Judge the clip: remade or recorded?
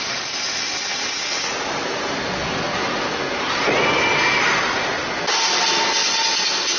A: recorded